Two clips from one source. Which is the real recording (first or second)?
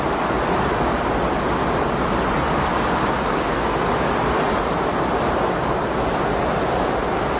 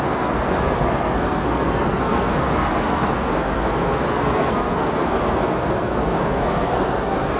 first